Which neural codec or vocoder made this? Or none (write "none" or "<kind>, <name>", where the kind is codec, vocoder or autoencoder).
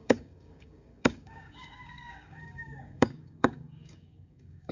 codec, DAC